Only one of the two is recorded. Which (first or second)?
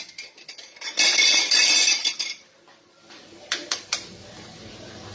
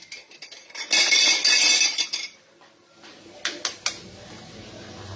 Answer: second